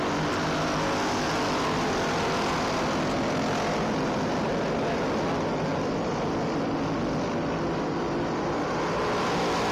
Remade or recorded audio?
recorded